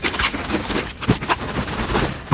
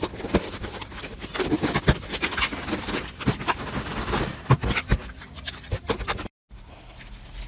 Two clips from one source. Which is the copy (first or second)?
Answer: first